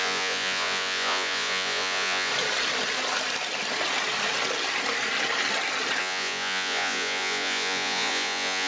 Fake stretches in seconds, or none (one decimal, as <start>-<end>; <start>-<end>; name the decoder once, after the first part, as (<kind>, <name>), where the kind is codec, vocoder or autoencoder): 0.0-2.3 (vocoder, Vocos); 6.0-8.7